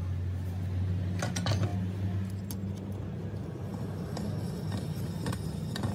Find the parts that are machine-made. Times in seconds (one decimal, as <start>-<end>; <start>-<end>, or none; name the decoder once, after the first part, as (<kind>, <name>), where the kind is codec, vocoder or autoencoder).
none